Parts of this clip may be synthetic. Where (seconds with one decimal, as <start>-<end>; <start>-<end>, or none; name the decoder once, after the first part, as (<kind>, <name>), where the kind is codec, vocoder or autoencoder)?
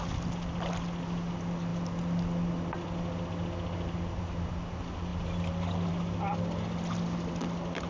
none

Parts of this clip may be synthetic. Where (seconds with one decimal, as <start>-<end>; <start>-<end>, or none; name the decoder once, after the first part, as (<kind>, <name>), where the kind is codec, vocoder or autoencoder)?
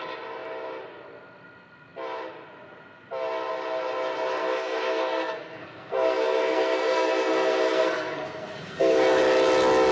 4.4-9.2 (codec, SNAC)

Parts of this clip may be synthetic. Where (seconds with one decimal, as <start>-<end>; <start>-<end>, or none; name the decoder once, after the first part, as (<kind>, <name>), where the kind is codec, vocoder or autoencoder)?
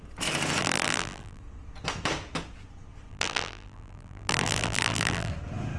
0.6-1.4 (vocoder, BigVGAN v2); 3.1-5.3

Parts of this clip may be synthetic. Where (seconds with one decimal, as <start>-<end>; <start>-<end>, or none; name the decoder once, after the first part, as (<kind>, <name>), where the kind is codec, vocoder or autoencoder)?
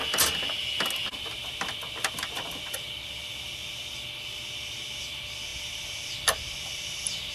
1.1-3.6 (vocoder, BigVGAN v2); 5.0-7.3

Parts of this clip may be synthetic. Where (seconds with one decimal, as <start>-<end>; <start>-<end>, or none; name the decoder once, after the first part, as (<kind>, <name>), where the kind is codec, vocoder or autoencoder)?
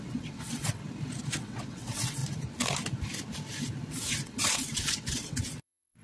0.0-0.8 (vocoder, WaveNeXt); 1.4-2.2; 3.9-6.0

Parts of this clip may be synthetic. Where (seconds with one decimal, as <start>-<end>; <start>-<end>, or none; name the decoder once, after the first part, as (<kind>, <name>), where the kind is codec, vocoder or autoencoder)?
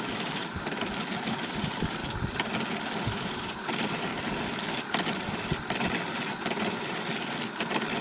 0.0-2.0 (vocoder, BigVGAN v2); 3.3-4.1